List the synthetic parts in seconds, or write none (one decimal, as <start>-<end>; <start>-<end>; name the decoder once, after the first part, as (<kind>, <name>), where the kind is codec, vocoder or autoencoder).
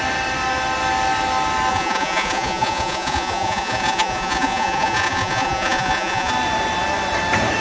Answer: 1.7-6.3 (vocoder, Vocos)